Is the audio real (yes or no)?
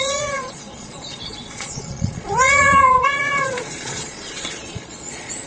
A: no